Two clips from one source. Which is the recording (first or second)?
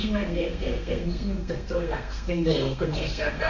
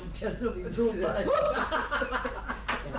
second